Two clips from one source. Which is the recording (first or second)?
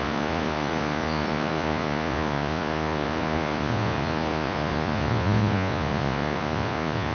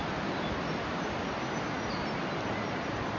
second